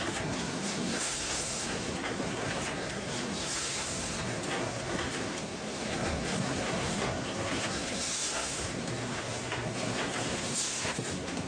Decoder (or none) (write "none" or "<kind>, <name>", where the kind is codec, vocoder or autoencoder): codec, SNAC